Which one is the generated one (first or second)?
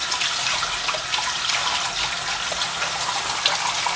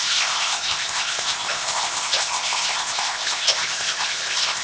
second